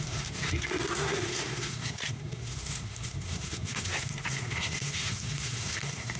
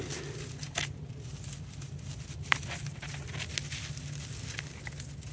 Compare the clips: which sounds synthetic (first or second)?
first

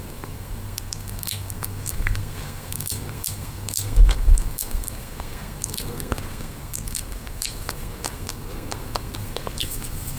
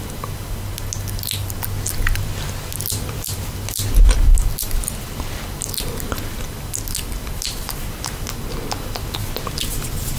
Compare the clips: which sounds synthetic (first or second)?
first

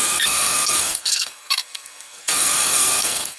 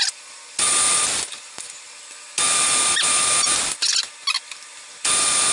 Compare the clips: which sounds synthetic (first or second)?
first